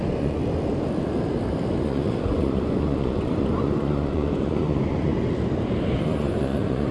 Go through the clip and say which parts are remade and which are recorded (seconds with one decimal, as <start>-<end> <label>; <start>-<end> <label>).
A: 0.0-0.4 remade; 0.4-1.8 recorded; 1.8-5.1 remade; 5.1-6.0 recorded; 6.0-6.9 remade